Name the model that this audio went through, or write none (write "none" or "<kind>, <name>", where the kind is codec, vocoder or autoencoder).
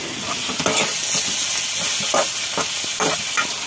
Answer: none